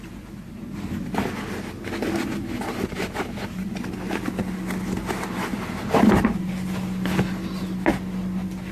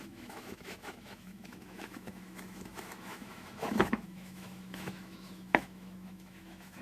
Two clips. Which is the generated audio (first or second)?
second